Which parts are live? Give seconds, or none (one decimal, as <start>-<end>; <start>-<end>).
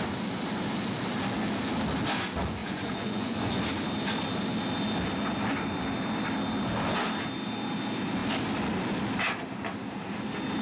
0.0-2.6; 3.6-10.6